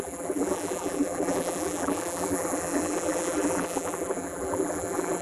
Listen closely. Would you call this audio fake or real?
fake